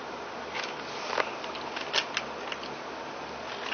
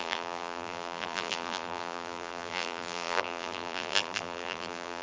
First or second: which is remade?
second